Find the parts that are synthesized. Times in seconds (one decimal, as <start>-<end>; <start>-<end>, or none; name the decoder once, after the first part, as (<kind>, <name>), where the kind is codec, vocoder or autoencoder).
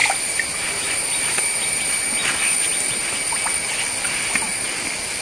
none